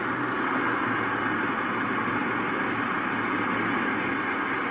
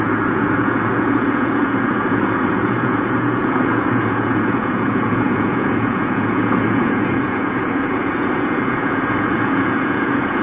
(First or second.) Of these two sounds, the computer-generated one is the second